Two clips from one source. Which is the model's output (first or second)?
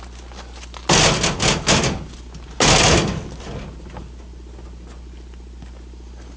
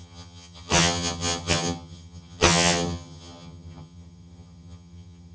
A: second